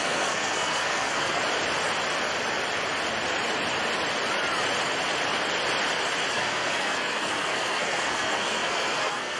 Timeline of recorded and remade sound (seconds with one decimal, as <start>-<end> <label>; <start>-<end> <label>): 0.0-1.4 remade; 1.4-6.3 recorded; 6.3-9.4 remade